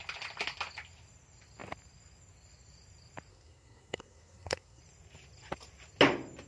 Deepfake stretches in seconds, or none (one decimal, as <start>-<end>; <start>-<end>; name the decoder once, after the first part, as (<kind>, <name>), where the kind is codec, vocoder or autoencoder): 3.3-4.8 (codec, SNAC)